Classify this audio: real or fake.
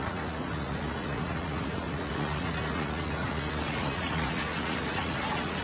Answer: fake